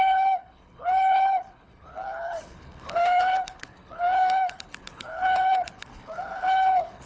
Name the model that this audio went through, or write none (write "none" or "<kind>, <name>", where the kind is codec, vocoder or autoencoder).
codec, HILCodec